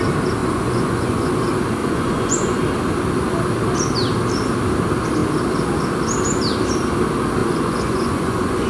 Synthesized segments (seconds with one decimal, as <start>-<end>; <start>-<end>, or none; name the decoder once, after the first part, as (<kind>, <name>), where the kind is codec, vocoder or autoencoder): 0.4-1.3 (vocoder, Vocos); 1.8-2.6; 7.4-8.7